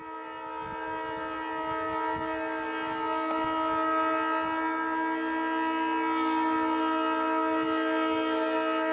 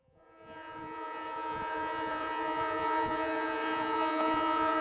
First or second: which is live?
first